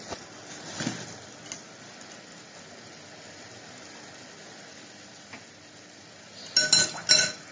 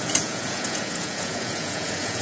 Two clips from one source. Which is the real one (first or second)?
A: first